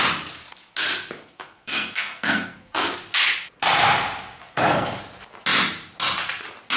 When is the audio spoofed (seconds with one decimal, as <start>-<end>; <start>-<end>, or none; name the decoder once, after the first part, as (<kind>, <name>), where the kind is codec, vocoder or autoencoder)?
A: 1.2-2.9 (codec, SNAC); 4.4-5.0